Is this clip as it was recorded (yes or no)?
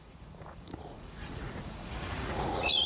no